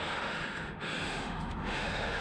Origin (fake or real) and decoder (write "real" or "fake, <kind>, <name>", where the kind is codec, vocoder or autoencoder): fake, autoencoder, DAC-VAE